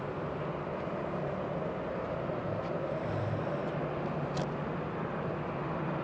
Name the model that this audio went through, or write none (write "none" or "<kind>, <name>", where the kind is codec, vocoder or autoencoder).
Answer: none